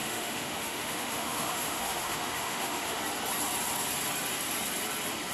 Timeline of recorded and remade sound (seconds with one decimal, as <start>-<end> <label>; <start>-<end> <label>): 0.0-3.0 remade; 3.0-5.3 recorded

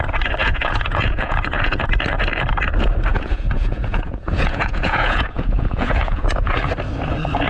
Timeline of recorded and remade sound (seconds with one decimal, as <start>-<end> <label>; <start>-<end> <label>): 0.0-0.4 recorded; 0.4-1.8 remade; 1.8-3.1 recorded; 3.1-6.6 remade; 6.6-7.5 recorded

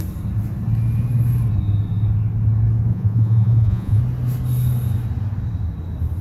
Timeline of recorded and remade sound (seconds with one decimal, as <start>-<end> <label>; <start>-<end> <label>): 0.0-2.9 recorded; 2.9-4.0 remade; 4.0-6.2 recorded

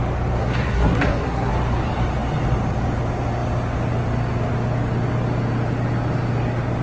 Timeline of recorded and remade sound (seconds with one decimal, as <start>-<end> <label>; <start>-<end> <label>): 0.0-0.4 recorded; 0.4-1.5 remade; 1.5-6.8 recorded

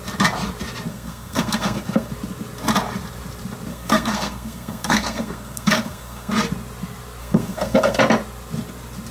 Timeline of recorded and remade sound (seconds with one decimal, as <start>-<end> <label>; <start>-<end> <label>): 0.0-0.9 recorded; 0.9-2.1 remade; 2.1-3.7 recorded; 3.7-6.3 remade; 6.3-7.2 recorded; 7.2-8.0 remade; 8.0-9.1 recorded